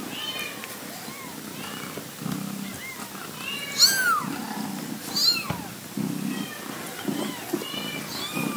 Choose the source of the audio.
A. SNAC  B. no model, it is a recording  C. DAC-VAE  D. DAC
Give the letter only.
B